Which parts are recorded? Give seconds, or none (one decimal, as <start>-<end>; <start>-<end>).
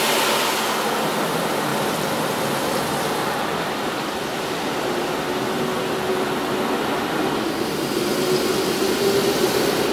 0.0-1.7; 3.0-3.5; 8.2-9.9